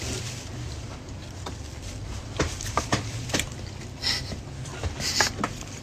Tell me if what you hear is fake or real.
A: fake